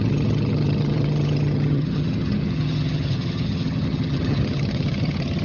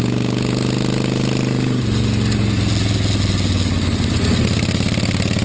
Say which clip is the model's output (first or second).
first